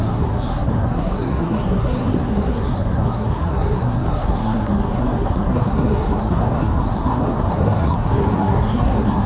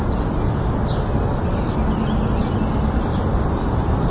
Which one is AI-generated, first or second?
first